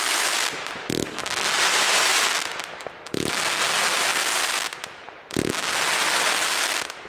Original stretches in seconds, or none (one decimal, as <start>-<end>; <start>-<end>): 0.0-7.1